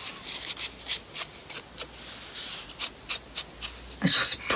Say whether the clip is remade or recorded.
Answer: recorded